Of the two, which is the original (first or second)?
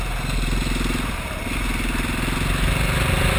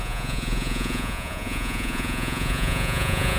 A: first